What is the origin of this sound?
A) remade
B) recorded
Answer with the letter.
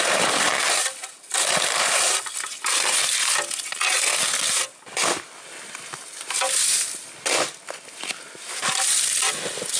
B